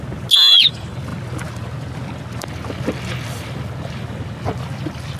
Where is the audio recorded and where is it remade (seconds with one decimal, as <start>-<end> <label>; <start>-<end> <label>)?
0.0-5.2 recorded